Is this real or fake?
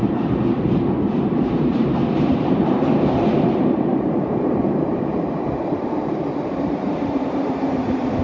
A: fake